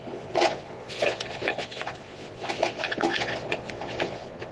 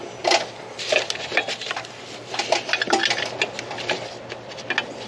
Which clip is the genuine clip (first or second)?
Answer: second